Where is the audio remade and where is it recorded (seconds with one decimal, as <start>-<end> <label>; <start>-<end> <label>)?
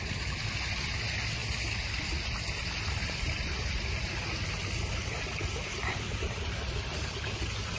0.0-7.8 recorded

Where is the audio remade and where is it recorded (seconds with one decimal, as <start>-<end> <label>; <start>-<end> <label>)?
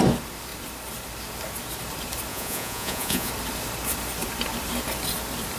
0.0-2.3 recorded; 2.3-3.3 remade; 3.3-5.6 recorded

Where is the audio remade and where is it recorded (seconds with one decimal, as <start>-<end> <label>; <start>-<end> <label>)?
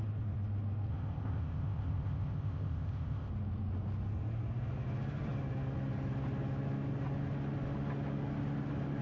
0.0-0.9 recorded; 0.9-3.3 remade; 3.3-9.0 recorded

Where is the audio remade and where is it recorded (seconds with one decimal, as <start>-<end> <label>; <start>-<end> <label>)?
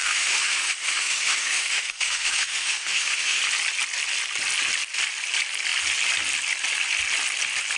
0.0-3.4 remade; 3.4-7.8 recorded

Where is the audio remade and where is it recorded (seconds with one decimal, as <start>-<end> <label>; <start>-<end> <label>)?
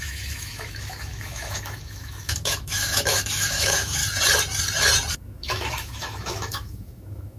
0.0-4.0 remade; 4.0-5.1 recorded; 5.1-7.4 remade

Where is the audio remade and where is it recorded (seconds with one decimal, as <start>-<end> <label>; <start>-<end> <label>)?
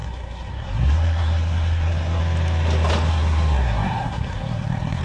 0.0-2.2 remade; 2.2-3.1 recorded; 3.1-5.0 remade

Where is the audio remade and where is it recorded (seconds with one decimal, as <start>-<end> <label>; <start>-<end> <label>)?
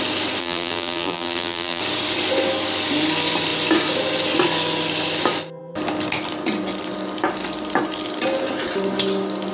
0.0-0.4 recorded; 0.4-1.8 remade; 1.8-9.5 recorded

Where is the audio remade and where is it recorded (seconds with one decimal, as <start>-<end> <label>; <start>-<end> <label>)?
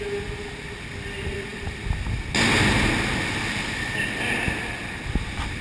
0.0-5.6 recorded